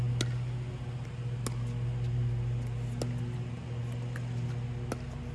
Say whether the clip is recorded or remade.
recorded